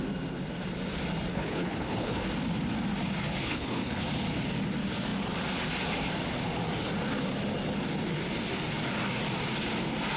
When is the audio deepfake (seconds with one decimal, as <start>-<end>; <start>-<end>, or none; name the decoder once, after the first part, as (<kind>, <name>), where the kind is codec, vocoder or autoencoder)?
1.3-2.2 (codec, HILCodec); 3.5-4.0